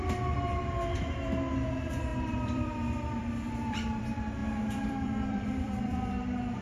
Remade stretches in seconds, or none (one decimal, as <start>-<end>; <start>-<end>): 2.1-4.0; 4.4-6.1